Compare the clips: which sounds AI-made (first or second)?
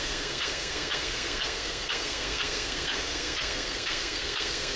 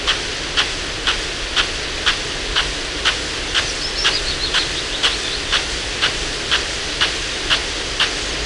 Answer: first